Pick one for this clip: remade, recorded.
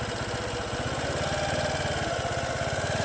recorded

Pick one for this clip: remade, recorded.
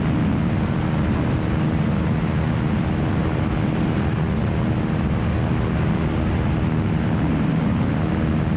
recorded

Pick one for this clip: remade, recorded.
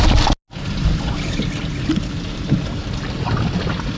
recorded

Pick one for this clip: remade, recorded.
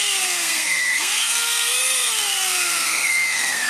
remade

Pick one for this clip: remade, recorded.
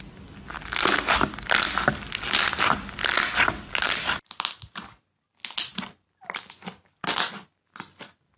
recorded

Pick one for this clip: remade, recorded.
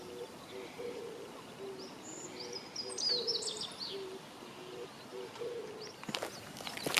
recorded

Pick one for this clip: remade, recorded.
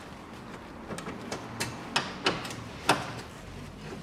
recorded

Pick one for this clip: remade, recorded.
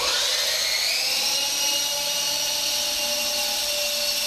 recorded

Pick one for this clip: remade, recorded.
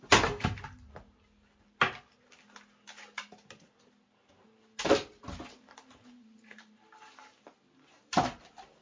recorded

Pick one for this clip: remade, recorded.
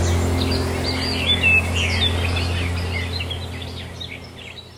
recorded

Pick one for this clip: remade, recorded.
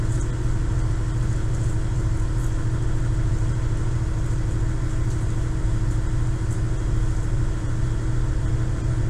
recorded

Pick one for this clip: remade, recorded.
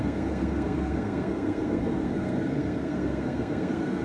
remade